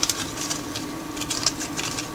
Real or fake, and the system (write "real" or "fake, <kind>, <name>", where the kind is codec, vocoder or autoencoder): real